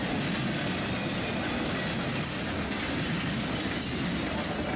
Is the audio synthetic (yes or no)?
no